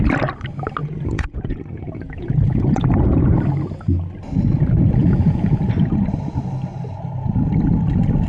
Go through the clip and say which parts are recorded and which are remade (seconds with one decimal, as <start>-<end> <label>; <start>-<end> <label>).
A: 0.0-0.8 recorded; 0.8-3.3 remade; 3.3-5.0 recorded; 5.0-5.5 remade; 5.5-8.3 recorded